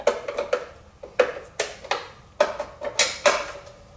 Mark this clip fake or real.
real